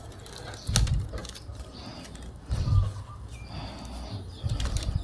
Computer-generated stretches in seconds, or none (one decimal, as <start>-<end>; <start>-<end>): none